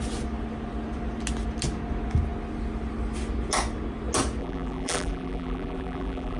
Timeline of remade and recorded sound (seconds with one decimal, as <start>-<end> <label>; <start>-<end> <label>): 0.0-4.4 recorded; 4.4-6.4 remade